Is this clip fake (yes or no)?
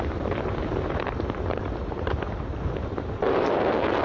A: yes